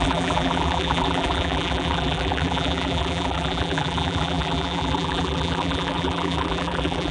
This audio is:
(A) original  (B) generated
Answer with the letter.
B